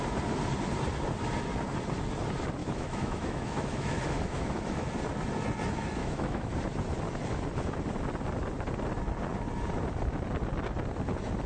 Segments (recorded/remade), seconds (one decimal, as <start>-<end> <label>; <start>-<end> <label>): 0.0-2.6 recorded; 2.6-4.9 remade; 4.9-6.0 recorded; 6.0-6.5 remade; 6.5-11.5 recorded